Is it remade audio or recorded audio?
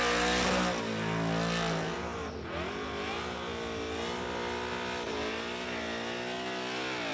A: recorded